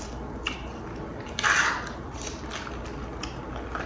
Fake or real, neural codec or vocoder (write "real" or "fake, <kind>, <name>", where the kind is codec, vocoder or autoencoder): real